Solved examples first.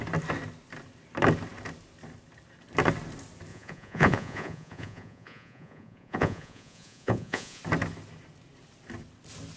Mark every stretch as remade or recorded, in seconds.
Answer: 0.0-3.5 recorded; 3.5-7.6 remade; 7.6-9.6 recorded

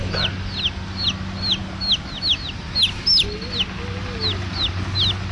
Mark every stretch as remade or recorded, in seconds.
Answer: 0.0-5.3 recorded

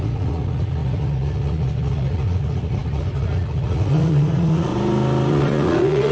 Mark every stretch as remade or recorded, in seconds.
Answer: 0.0-4.7 remade; 4.7-5.3 recorded; 5.3-6.1 remade

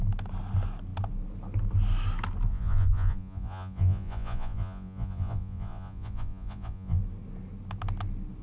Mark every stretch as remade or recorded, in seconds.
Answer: 0.0-2.5 recorded; 2.5-7.0 remade; 7.0-8.4 recorded

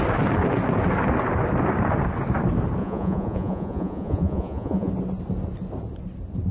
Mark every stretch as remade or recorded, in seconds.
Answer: 0.0-2.8 recorded; 2.8-4.9 remade; 4.9-6.5 recorded

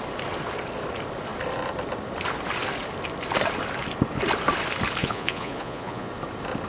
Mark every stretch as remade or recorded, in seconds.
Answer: 0.0-5.0 recorded; 5.0-6.1 remade; 6.1-6.7 recorded

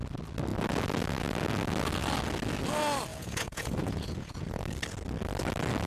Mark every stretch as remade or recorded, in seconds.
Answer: 0.0-3.1 recorded; 3.1-4.6 remade; 4.6-5.9 recorded